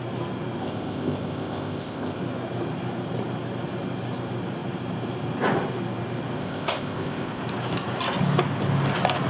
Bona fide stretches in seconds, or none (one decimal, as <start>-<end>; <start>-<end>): 0.0-0.6; 2.2-6.4; 7.4-9.3